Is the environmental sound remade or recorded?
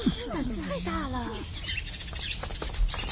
recorded